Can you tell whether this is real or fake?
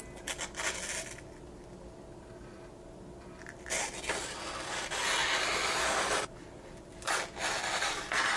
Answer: real